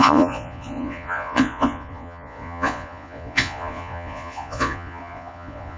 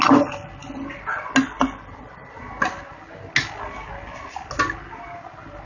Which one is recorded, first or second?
second